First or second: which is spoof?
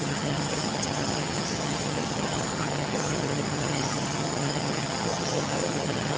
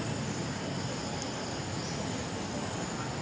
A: first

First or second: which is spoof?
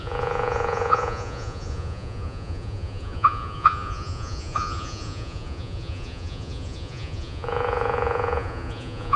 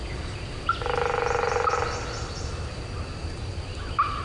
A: first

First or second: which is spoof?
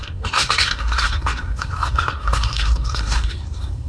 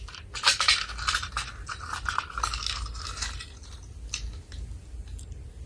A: first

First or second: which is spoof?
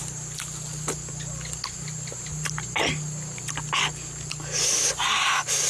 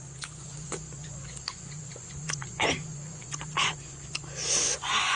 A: second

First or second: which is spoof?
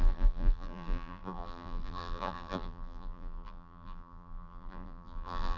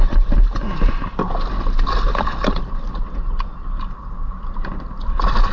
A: first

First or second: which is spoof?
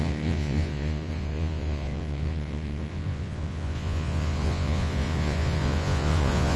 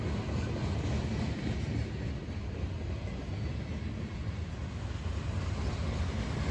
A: first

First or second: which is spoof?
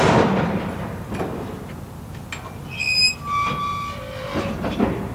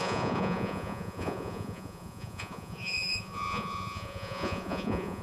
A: second